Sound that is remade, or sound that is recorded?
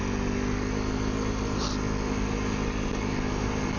recorded